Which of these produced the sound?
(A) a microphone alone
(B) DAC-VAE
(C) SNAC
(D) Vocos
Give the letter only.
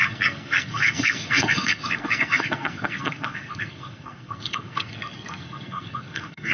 C